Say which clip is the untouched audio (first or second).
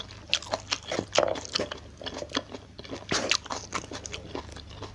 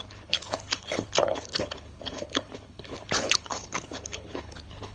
first